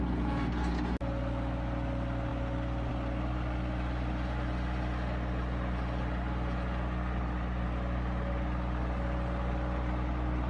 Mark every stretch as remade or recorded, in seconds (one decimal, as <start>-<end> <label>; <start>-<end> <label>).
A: 0.0-10.5 recorded